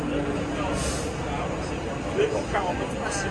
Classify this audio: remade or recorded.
recorded